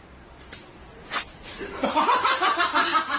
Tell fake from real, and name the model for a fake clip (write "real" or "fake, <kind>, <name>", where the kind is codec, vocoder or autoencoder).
real